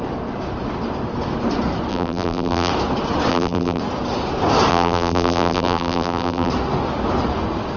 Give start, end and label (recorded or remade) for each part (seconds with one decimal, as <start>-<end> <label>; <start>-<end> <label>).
0.0-1.9 recorded; 1.9-2.7 remade; 2.7-3.3 recorded; 3.3-3.8 remade; 3.8-4.7 recorded; 4.7-6.5 remade; 6.5-7.8 recorded